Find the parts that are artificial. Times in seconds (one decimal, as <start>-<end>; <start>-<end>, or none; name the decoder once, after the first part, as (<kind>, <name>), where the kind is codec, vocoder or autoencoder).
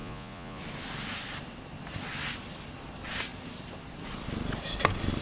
0.0-0.6 (vocoder, Vocos)